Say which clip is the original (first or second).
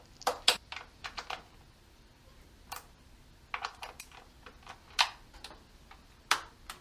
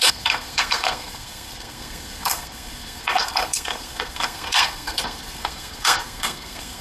first